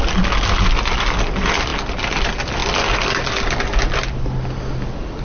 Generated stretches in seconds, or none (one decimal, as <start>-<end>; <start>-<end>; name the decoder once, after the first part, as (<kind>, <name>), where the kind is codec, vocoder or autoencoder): none